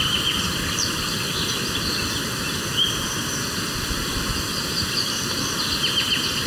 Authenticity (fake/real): real